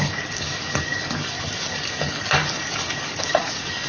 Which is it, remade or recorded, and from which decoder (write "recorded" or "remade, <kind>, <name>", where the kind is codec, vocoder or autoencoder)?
remade, codec, DAC